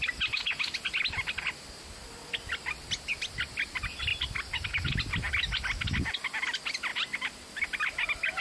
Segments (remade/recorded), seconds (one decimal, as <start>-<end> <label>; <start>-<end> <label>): 0.0-6.9 recorded; 6.9-7.5 remade; 7.5-8.4 recorded